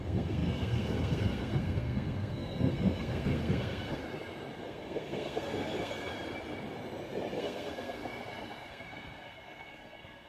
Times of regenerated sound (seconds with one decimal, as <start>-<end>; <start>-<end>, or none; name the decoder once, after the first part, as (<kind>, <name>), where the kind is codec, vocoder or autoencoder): 0.0-4.0 (codec, SNAC); 4.6-6.1; 7.4-8.0; 8.7-10.3